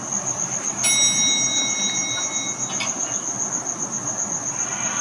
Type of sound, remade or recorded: recorded